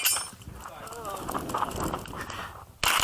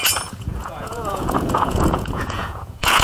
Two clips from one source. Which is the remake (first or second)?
second